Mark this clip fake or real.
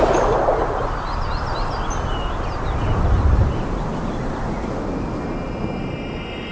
real